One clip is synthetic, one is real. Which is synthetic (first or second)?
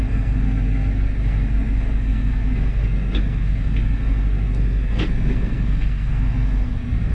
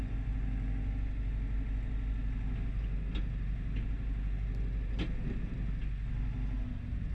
first